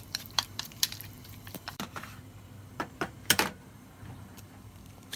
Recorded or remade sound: remade